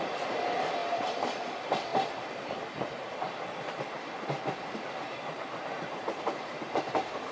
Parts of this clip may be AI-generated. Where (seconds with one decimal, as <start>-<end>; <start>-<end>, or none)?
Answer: 0.0-1.9; 4.4-7.3